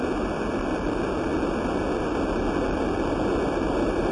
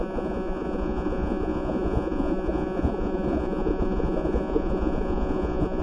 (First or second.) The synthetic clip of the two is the second